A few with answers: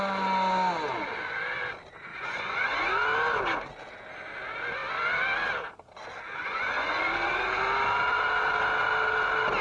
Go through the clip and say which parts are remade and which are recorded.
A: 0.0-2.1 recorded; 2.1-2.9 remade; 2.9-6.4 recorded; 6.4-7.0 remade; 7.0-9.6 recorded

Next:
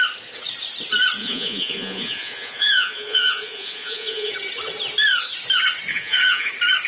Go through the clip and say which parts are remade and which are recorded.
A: 0.0-1.2 recorded; 1.2-4.3 remade; 4.3-5.9 recorded; 5.9-6.5 remade; 6.5-6.9 recorded

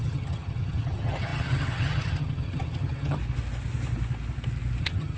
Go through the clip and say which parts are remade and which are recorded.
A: 0.0-3.2 remade; 3.2-4.8 recorded; 4.8-5.2 remade